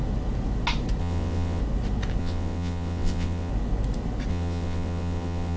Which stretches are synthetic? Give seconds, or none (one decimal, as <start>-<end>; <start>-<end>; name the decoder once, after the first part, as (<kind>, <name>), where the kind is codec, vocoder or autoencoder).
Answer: 1.0-1.6 (vocoder, WaveNeXt); 2.2-3.5; 4.3-5.6